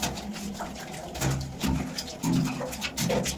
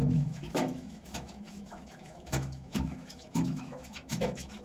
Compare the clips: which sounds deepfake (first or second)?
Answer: second